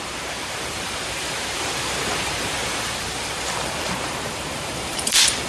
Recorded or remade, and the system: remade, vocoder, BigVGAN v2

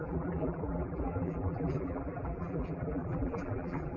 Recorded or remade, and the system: remade, vocoder, BigVGAN v2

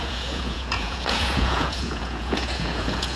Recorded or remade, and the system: remade, vocoder, Vocos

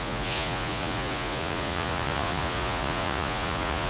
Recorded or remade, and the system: remade, vocoder, Vocos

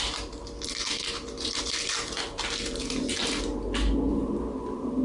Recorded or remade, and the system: recorded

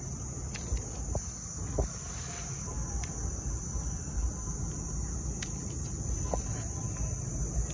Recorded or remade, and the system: recorded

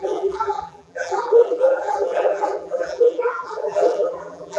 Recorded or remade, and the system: remade, vocoder, BigVGAN v2